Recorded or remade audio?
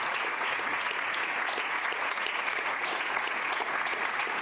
remade